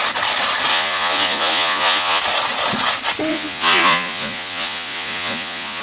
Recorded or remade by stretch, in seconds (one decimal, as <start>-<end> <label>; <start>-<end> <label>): 0.0-0.7 recorded; 0.7-2.2 remade; 2.2-3.3 recorded; 3.3-5.8 remade